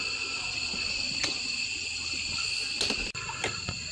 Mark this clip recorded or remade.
recorded